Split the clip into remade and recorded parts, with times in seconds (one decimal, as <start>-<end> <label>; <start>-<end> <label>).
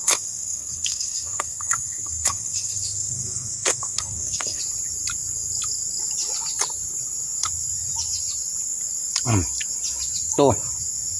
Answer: 0.0-4.6 remade; 4.6-11.2 recorded